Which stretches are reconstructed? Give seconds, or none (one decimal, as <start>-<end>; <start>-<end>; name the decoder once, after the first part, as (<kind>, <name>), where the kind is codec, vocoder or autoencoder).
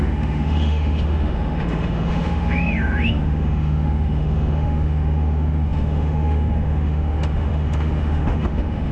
0.0-8.9 (autoencoder, DAC-VAE)